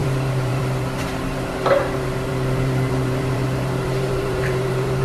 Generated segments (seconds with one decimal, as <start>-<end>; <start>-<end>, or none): 0.0-5.0